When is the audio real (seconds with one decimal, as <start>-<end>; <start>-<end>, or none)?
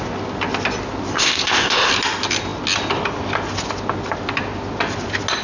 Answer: 0.0-1.1; 1.9-5.4